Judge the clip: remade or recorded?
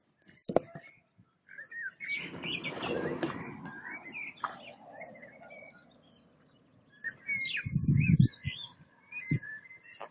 recorded